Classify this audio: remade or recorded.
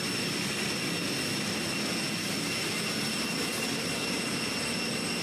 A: recorded